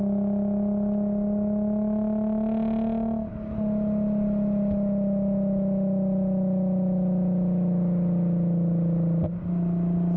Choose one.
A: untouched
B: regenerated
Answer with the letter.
A